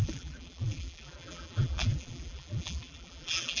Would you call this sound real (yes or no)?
no